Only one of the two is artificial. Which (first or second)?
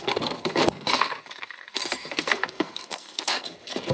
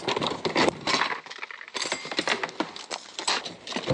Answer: first